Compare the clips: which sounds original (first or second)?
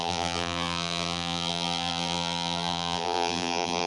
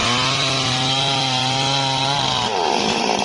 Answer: second